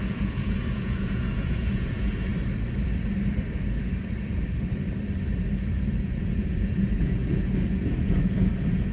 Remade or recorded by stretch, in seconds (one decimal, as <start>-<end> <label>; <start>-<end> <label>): 0.0-2.3 remade; 2.3-5.6 recorded; 5.6-8.9 remade